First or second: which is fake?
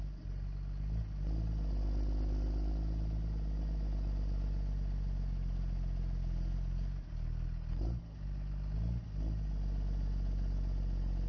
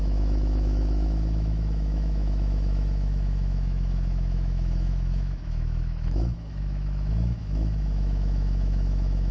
second